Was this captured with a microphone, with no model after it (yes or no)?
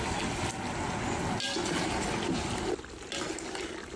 yes